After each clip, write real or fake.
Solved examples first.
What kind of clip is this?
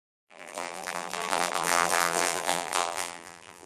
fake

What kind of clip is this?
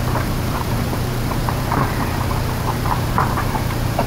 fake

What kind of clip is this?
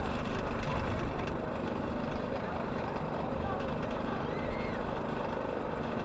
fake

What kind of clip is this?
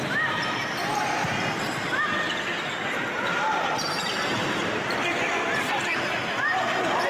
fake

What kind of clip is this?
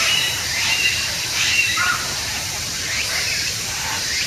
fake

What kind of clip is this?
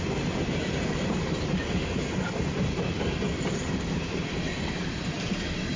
fake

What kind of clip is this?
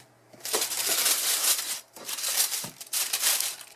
fake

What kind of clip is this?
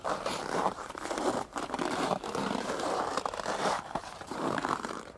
fake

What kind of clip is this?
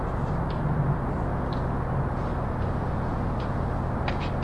real